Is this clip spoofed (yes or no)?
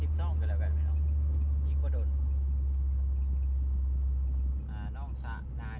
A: no